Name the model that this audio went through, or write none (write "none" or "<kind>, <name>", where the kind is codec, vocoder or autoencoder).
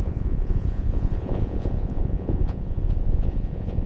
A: vocoder, Vocos